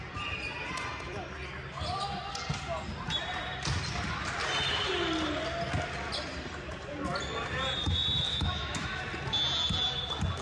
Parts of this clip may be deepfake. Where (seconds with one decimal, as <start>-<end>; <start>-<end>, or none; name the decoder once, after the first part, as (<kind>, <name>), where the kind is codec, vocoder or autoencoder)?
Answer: 8.3-9.0 (autoencoder, DAC-VAE)